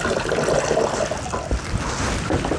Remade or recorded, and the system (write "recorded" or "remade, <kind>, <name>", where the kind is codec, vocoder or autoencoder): recorded